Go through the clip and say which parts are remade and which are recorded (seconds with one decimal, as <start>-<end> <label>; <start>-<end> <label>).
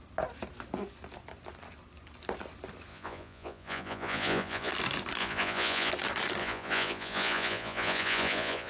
0.0-2.9 recorded; 2.9-4.7 remade; 4.7-5.2 recorded; 5.2-5.9 remade; 5.9-6.4 recorded; 6.4-8.7 remade